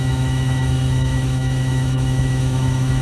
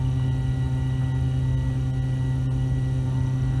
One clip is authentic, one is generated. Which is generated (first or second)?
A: first